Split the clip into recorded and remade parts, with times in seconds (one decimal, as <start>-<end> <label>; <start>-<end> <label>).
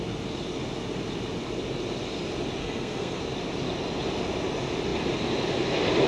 0.0-2.6 recorded; 2.6-3.2 remade; 3.2-6.1 recorded